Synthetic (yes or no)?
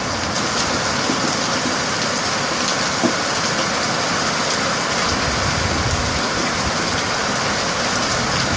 no